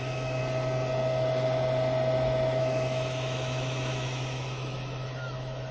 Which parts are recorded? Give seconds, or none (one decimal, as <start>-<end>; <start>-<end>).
0.4-2.6